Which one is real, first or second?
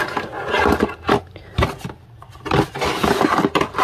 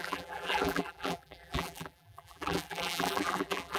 first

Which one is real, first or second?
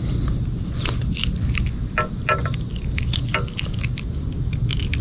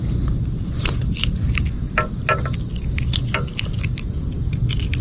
first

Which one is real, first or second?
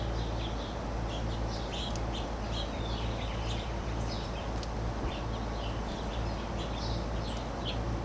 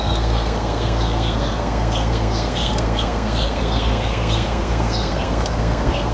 first